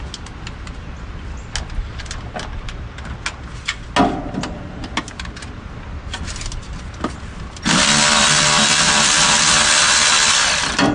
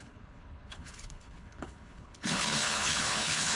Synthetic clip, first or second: second